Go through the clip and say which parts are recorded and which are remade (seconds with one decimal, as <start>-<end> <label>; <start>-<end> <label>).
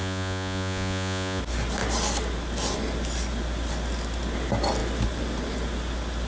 0.0-1.4 remade; 1.4-6.3 recorded